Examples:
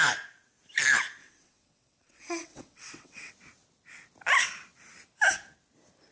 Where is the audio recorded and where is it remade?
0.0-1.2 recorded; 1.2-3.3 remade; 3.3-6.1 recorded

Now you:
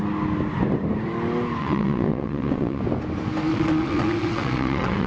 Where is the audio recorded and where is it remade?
0.0-1.6 recorded; 1.6-2.8 remade; 2.8-3.5 recorded; 3.5-5.1 remade